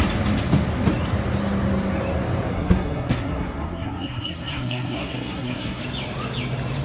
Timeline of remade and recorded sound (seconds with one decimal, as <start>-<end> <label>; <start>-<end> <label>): 0.0-2.5 recorded; 2.5-5.8 remade; 5.8-6.8 recorded